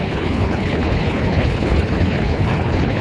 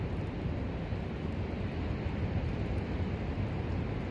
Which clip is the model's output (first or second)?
first